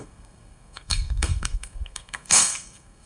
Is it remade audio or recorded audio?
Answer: remade